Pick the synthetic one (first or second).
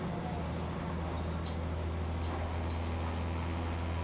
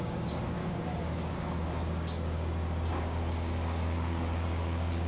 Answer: second